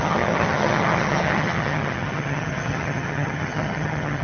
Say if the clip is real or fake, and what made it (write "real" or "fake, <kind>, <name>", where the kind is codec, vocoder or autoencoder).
fake, vocoder, HiFi-GAN